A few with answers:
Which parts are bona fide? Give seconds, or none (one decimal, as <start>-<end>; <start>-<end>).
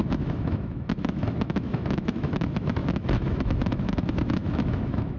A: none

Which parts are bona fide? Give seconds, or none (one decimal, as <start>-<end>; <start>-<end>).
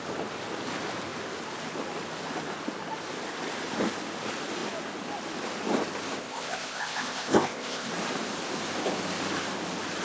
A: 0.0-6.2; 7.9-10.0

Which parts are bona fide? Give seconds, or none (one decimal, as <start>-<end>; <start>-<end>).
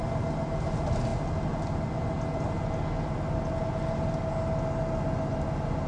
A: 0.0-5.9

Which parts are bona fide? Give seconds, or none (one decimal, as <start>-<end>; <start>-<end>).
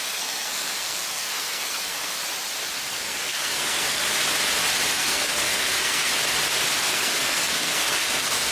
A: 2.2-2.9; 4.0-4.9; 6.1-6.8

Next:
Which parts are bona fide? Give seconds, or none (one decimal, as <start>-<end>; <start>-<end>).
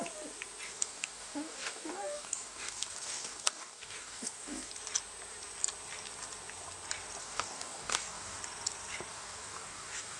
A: 0.0-0.7; 4.7-7.2; 8.4-9.1